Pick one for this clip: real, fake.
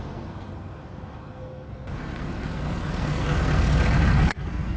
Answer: fake